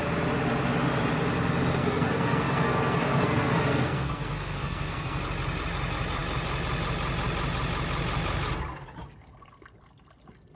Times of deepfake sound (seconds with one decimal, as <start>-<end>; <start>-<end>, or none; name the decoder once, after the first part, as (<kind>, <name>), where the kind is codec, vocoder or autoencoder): 1.7-5.2 (codec, SNAC)